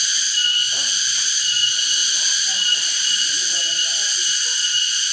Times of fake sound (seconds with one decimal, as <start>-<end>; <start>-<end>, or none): none